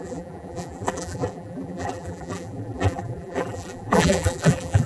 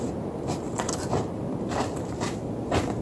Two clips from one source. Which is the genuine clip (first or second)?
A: second